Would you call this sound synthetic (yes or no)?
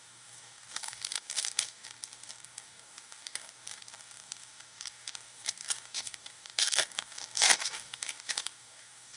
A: yes